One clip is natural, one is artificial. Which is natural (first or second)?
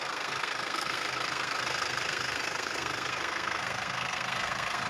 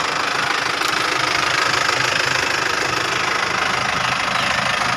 second